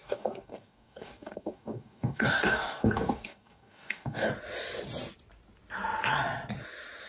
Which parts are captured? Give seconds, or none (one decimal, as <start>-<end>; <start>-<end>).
4.3-7.1